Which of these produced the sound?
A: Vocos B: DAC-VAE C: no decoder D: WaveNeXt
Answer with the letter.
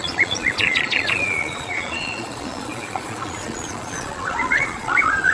A